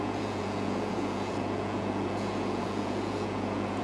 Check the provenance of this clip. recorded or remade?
remade